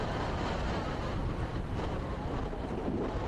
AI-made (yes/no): no